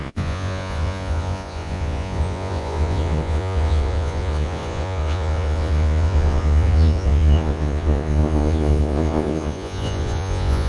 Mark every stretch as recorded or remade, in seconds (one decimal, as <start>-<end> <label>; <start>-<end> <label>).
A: 0.0-10.7 remade